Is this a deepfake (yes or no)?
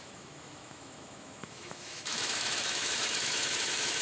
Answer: yes